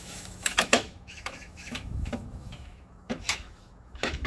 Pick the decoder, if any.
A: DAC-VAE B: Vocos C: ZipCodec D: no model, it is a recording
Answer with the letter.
A